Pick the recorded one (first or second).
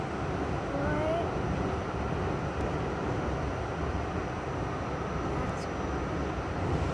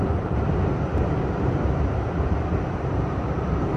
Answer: first